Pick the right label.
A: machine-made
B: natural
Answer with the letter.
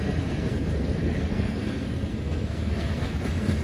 A